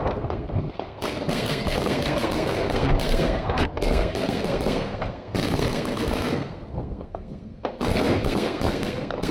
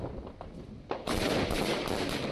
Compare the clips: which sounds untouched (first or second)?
second